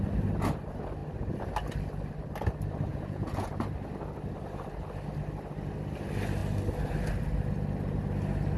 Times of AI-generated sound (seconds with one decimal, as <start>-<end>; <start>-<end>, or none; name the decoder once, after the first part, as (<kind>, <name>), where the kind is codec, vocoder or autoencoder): 2.9-3.5 (vocoder, Vocos)